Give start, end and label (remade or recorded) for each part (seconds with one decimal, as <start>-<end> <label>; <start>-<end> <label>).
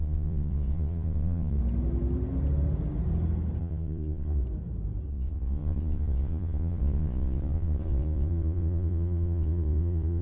0.0-1.6 remade; 1.6-3.6 recorded; 3.6-4.4 remade; 4.4-5.1 recorded; 5.1-10.2 remade